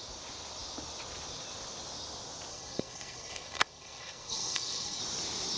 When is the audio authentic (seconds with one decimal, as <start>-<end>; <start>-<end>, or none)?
0.0-2.5; 5.0-5.6